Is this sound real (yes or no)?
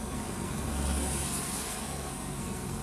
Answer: no